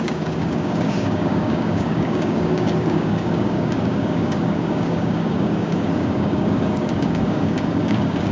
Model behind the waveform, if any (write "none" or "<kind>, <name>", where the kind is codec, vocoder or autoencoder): codec, DAC